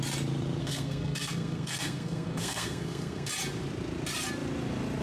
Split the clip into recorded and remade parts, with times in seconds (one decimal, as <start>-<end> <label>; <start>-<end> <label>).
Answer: 0.0-0.6 recorded; 0.6-3.3 remade; 3.3-5.0 recorded